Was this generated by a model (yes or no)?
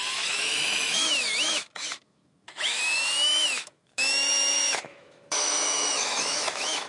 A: yes